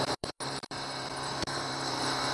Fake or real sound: fake